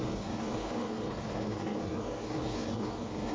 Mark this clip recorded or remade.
remade